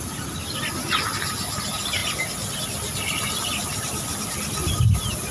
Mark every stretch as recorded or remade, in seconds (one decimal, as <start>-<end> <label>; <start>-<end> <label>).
0.0-5.3 recorded